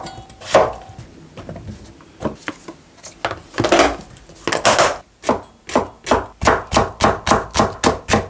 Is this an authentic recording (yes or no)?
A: yes